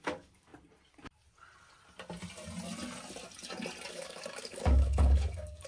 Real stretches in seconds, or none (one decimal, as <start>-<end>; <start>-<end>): 0.5-3.9